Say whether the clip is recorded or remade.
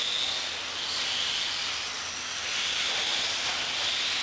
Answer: recorded